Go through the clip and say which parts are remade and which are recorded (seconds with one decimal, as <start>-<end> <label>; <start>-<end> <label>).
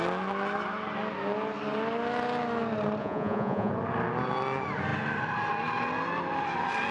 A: 0.0-3.0 recorded; 3.0-3.7 remade; 3.7-6.9 recorded